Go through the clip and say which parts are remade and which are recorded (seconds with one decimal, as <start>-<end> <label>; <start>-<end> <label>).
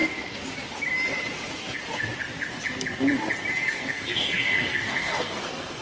0.0-3.5 recorded; 3.5-5.8 remade